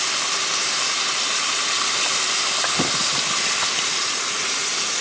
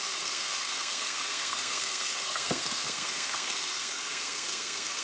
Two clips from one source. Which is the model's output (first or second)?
second